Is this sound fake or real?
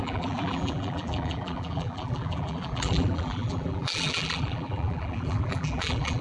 fake